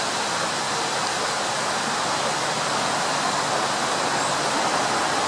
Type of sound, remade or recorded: recorded